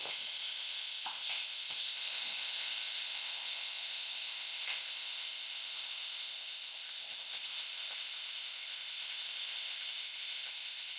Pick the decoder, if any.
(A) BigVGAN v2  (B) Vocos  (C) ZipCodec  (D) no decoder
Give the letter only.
C